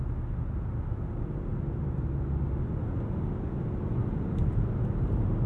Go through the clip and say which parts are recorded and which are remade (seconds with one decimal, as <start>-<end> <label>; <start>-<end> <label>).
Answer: 0.0-5.5 recorded

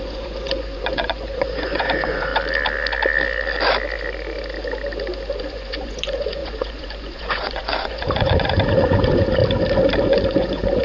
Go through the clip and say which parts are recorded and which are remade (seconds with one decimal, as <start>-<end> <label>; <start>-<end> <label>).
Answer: 0.0-2.3 remade; 2.3-5.4 recorded; 5.4-9.4 remade; 9.4-10.0 recorded; 10.0-10.8 remade

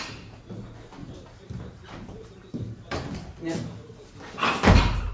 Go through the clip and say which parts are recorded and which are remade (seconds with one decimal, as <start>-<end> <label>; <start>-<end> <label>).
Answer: 0.0-1.0 recorded; 1.0-4.1 remade; 4.1-5.1 recorded

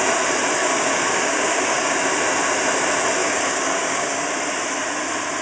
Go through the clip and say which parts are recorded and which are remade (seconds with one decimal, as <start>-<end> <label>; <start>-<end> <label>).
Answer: 0.0-0.6 recorded; 0.6-1.9 remade; 1.9-3.2 recorded; 3.2-4.2 remade; 4.2-5.4 recorded

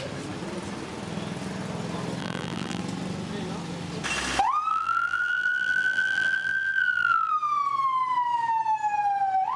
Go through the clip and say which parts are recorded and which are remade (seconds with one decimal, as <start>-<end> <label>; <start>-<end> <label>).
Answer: 0.0-2.2 recorded; 2.2-2.8 remade; 2.8-4.7 recorded; 4.7-7.3 remade; 7.3-9.6 recorded

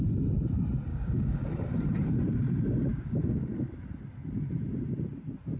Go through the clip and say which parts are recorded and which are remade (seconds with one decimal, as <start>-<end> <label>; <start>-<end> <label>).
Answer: 0.0-0.9 recorded; 0.9-1.5 remade; 1.5-2.9 recorded; 2.9-3.5 remade; 3.5-5.6 recorded

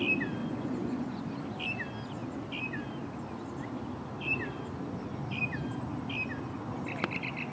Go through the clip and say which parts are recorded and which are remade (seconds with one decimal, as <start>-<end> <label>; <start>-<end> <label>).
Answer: 0.0-0.4 recorded; 0.4-1.2 remade; 1.2-7.5 recorded

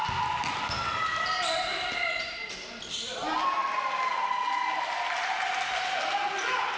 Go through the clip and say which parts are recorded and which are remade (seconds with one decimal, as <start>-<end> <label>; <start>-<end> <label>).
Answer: 0.0-1.7 recorded; 1.7-3.9 remade; 3.9-6.8 recorded